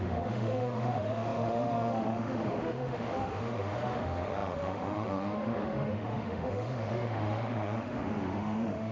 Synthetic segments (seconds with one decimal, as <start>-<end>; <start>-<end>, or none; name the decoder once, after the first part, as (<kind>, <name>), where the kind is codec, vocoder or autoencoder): 0.0-8.9 (autoencoder, DAC-VAE)